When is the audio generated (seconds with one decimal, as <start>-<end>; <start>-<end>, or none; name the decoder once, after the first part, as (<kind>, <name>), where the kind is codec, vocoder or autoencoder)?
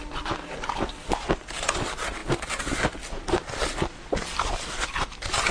none